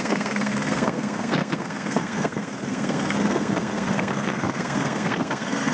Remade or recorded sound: remade